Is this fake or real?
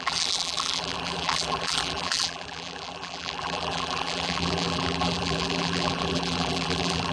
fake